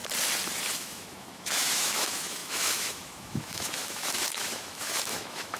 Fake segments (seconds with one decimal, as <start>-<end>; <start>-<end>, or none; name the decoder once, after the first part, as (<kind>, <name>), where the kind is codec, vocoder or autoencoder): 0.7-5.6 (autoencoder, DAC-VAE)